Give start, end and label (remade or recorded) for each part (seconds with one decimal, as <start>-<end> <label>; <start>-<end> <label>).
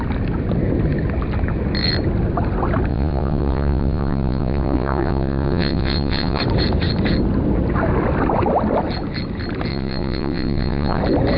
0.0-2.9 recorded; 2.9-6.4 remade; 6.4-9.7 recorded; 9.7-11.0 remade; 11.0-11.4 recorded